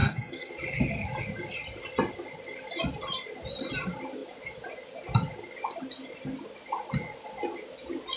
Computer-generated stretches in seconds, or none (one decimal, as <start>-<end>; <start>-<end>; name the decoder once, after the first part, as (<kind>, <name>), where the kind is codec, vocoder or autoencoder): 0.0-0.5 (codec, SNAC)